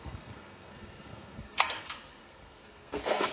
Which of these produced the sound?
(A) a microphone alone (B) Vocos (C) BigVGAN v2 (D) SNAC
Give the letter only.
D